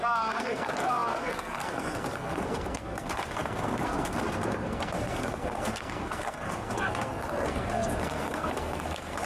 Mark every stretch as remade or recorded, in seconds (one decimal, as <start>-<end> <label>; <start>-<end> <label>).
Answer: 0.0-9.3 remade